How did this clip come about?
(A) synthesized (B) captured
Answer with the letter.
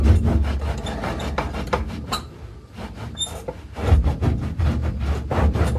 B